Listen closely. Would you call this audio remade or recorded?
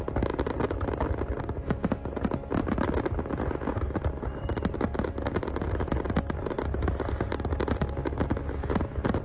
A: recorded